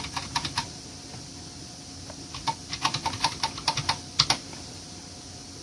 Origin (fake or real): real